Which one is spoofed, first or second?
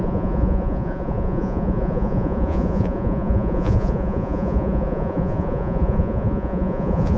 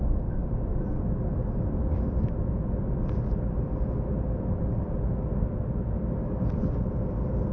first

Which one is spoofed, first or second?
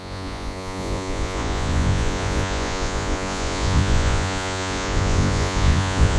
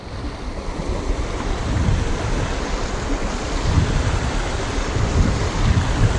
first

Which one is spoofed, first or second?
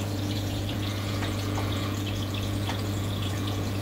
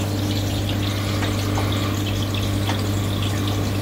first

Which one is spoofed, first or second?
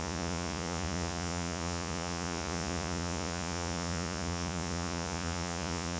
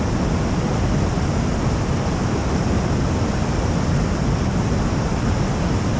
first